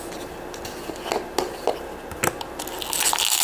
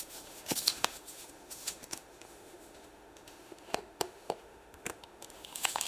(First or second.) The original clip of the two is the first